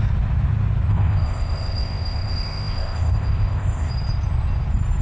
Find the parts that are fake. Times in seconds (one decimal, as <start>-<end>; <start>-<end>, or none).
0.9-3.9